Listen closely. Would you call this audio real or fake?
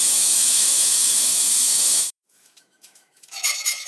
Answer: fake